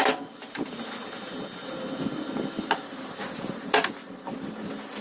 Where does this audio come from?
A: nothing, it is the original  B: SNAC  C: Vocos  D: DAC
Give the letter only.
A